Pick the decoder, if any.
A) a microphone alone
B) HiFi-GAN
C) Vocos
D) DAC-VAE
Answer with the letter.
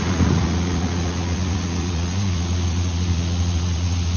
C